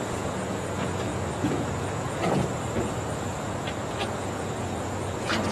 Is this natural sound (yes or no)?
no